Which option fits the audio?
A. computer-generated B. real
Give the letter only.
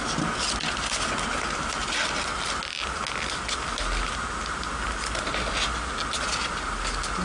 B